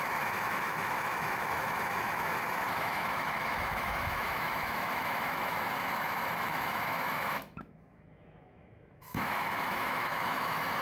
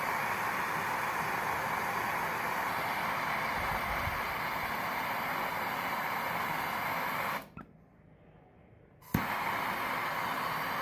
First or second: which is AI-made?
first